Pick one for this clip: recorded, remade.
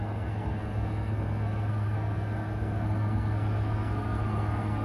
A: remade